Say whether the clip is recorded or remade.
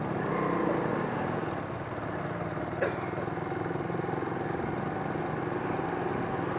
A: recorded